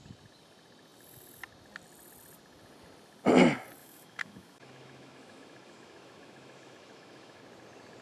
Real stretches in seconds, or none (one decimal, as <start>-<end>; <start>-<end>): 0.0-3.8; 7.4-8.0